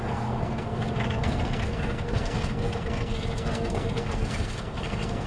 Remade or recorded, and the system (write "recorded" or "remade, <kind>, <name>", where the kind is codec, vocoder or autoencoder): remade, codec, SNAC